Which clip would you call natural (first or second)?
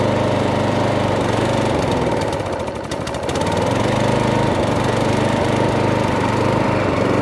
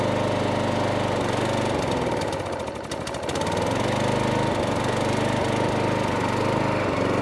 second